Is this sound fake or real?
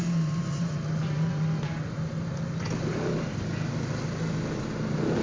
real